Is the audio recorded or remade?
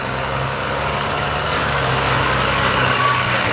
remade